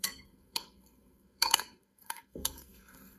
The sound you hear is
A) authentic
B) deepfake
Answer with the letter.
B